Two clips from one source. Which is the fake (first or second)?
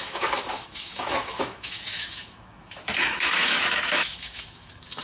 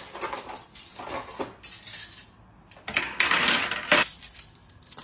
first